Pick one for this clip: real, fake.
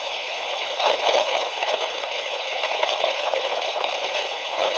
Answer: fake